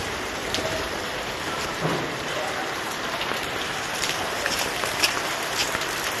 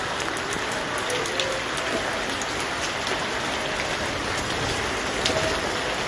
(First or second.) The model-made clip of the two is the first